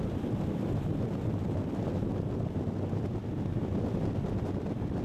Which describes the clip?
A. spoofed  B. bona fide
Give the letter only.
B